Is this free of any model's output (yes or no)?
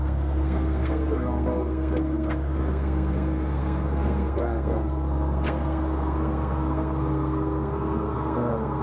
no